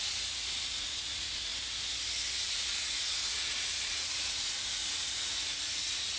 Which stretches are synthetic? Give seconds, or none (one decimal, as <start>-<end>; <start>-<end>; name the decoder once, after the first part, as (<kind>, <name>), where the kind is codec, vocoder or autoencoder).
0.0-1.5 (vocoder, Vocos); 2.3-6.2